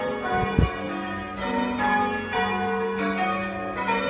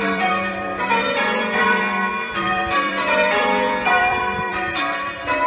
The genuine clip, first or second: first